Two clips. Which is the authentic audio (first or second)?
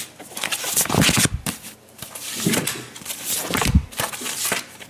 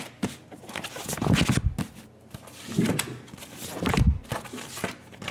second